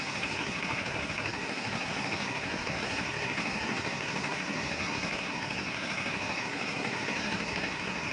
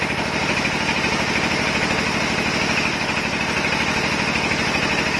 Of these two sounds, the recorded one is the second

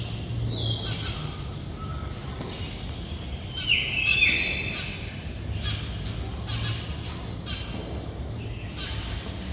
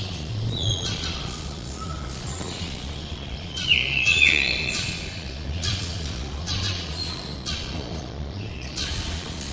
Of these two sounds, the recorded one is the first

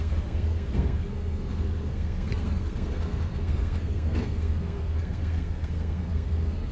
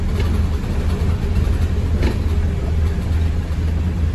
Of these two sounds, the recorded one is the second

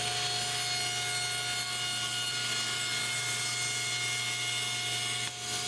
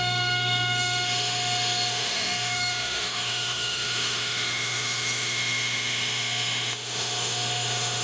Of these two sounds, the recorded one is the first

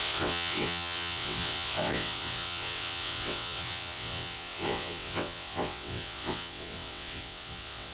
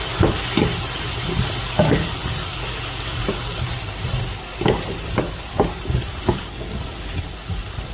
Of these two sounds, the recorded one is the second